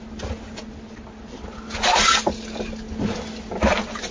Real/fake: real